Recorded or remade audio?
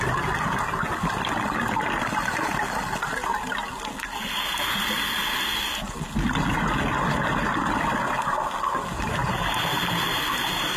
recorded